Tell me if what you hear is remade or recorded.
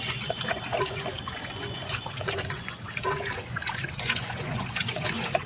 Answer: remade